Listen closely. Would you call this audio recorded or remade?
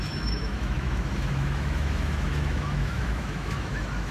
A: remade